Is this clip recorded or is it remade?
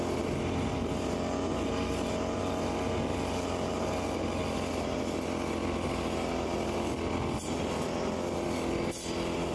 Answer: recorded